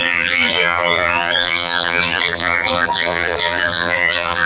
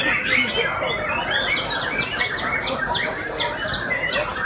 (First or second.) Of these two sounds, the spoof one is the first